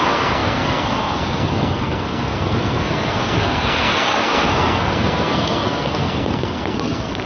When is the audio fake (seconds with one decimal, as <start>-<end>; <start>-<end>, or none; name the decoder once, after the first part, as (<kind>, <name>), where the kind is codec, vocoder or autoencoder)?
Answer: 0.0-7.3 (codec, SNAC)